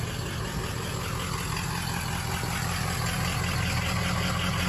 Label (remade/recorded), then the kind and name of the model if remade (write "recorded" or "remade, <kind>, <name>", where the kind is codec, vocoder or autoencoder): recorded